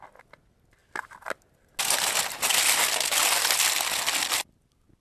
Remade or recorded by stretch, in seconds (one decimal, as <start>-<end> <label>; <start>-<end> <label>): 0.0-5.0 recorded